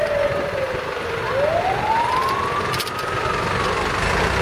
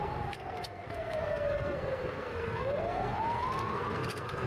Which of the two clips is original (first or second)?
first